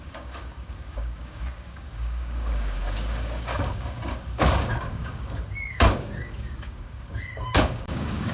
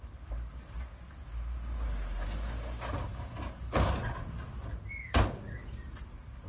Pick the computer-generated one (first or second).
first